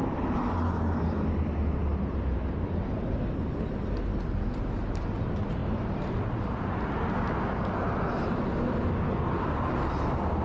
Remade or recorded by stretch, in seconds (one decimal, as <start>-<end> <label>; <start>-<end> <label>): 0.0-10.4 recorded

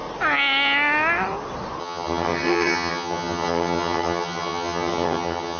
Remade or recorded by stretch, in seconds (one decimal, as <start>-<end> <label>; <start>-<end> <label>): 0.0-1.8 recorded; 1.8-5.6 remade

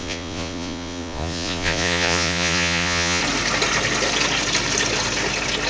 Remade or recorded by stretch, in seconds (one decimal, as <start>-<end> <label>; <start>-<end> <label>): 0.0-3.2 remade; 3.2-5.7 recorded

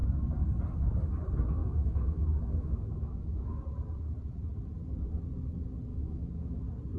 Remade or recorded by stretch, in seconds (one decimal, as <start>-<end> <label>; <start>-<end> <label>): 0.0-1.6 recorded; 1.6-3.6 remade; 3.6-5.9 recorded; 5.9-6.6 remade; 6.6-7.0 recorded

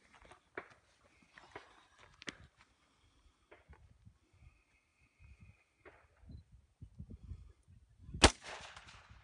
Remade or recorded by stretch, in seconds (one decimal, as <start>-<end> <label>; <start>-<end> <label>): 0.0-9.2 recorded

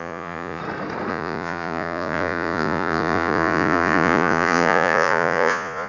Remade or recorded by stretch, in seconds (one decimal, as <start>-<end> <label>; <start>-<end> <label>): 0.0-0.6 remade; 0.6-1.1 recorded; 1.1-5.9 remade

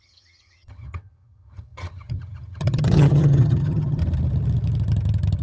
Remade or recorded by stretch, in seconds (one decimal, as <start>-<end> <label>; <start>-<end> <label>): 0.0-4.0 remade; 4.0-5.4 recorded